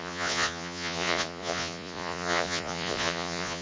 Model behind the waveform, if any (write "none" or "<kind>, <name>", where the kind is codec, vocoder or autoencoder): vocoder, Vocos